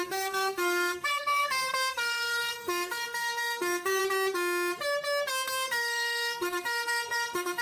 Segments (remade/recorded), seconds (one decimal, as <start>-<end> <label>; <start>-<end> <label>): 0.0-4.0 remade; 4.0-5.3 recorded; 5.3-7.6 remade